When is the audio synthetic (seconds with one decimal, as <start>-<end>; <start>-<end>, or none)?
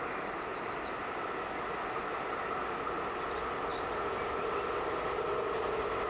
none